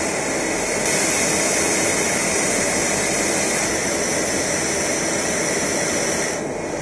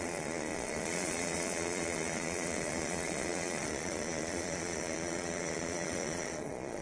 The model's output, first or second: second